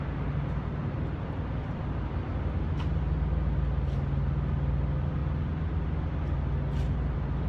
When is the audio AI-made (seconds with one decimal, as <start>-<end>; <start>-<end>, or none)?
none